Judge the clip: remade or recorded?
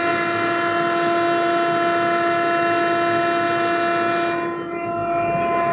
recorded